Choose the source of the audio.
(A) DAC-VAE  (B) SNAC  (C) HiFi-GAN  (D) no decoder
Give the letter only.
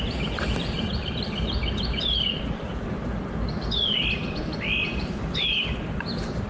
D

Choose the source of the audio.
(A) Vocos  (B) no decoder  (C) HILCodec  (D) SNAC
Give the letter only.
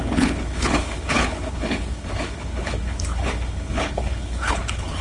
C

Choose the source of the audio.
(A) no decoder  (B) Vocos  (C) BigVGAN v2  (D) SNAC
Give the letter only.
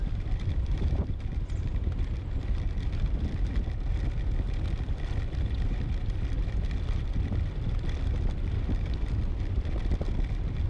C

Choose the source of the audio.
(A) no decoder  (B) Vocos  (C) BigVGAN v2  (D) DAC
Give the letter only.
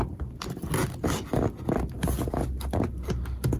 A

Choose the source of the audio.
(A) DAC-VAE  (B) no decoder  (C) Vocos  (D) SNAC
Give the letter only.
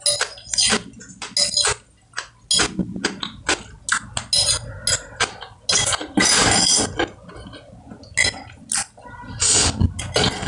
B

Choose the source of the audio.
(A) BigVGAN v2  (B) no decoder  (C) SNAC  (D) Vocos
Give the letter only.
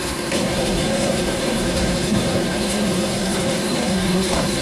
C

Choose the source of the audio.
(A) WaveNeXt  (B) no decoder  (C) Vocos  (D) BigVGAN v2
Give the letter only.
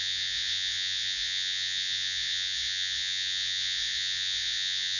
C